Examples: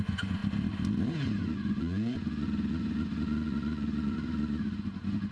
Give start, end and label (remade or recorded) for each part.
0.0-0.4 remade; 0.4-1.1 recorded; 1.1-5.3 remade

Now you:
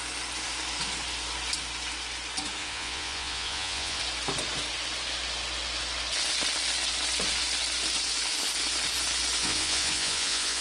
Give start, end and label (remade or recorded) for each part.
0.0-2.6 recorded; 2.6-4.0 remade; 4.0-9.4 recorded; 9.4-10.6 remade

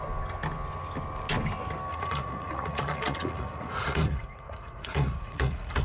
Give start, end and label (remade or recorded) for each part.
0.0-1.9 recorded; 1.9-5.8 remade

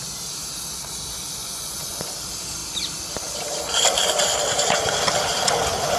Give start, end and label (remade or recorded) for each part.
0.0-1.4 recorded; 1.4-2.1 remade; 2.1-6.0 recorded

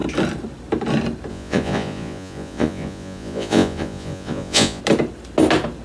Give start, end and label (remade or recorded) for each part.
0.0-1.3 recorded; 1.3-4.8 remade; 4.8-5.8 recorded

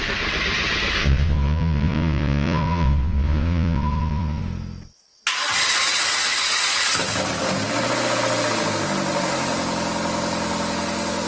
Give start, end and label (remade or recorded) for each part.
0.0-1.0 recorded; 1.0-4.4 remade; 4.4-11.3 recorded

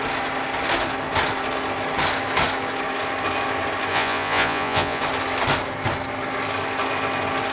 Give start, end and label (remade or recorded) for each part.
0.0-3.9 recorded; 3.9-5.0 remade; 5.0-7.5 recorded

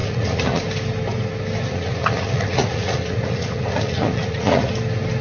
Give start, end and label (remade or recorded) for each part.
0.0-0.6 remade; 0.6-1.7 recorded; 1.7-4.7 remade; 4.7-5.2 recorded